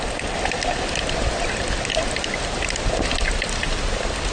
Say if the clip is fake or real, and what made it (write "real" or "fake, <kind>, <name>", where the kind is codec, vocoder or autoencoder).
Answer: real